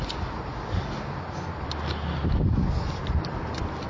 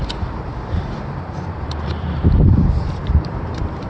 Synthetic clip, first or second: second